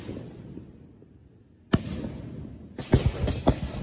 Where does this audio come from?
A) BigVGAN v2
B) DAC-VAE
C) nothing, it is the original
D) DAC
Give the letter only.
C